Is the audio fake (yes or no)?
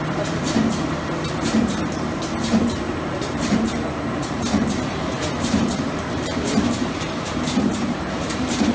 yes